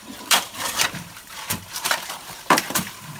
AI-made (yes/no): yes